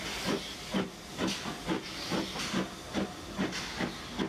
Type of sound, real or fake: real